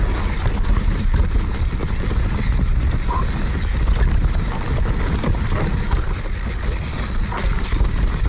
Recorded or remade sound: recorded